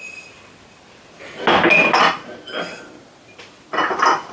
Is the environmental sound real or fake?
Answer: real